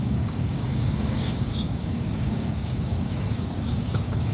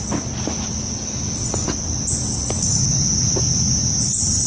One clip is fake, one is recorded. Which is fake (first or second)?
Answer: first